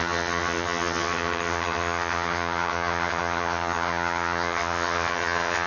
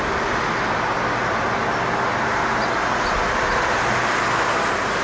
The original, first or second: second